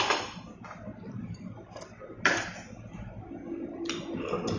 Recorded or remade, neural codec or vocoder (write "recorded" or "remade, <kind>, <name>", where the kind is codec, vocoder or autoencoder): recorded